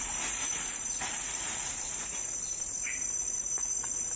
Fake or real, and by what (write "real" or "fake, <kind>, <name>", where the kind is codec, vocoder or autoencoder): fake, vocoder, Vocos